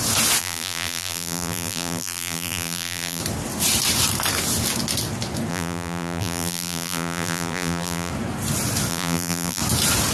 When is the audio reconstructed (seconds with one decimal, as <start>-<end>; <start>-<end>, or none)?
0.4-3.2; 5.5-8.1; 8.9-9.6